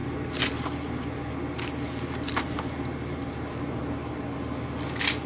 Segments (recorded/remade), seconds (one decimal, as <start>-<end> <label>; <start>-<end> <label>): 0.0-5.3 recorded